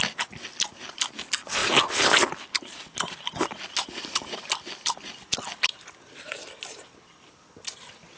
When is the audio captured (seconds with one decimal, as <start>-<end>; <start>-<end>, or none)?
0.0-8.2